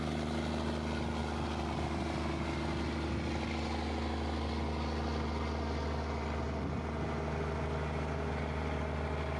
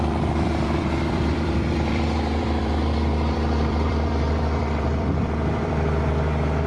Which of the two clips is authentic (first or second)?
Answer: first